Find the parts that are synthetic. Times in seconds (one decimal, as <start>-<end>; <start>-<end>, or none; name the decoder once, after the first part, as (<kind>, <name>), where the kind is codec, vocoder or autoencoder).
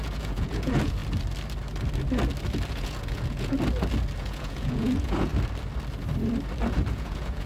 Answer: 0.0-1.0 (vocoder, Vocos); 2.7-3.5; 4.2-5.3; 6.9-7.5